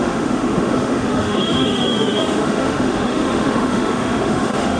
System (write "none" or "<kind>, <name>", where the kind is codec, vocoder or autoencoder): autoencoder, DAC-VAE